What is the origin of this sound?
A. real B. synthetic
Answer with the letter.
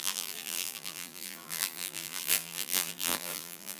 B